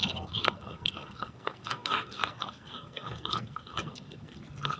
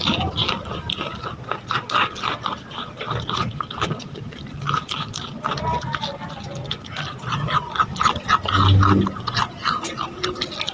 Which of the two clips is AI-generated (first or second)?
first